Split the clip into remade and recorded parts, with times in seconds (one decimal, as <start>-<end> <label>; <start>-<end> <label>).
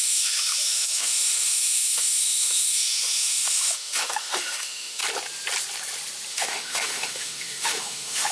0.0-5.0 remade; 5.0-6.3 recorded; 6.3-8.3 remade